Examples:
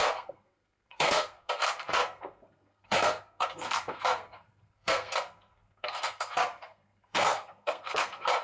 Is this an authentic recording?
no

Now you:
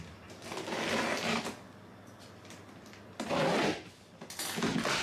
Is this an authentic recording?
yes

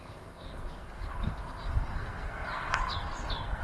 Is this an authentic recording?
no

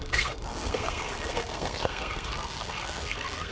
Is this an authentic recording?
no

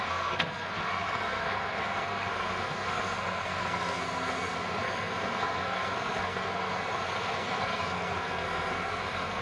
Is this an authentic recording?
no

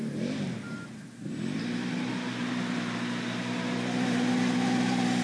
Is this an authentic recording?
yes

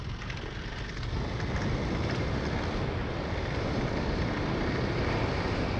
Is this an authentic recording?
yes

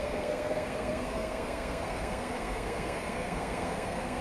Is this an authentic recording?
no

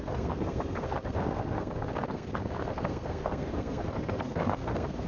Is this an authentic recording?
no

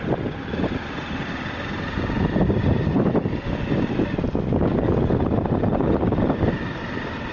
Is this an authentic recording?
yes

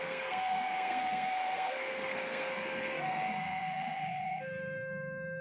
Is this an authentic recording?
no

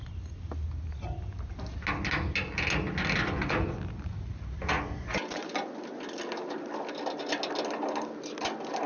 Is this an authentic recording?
yes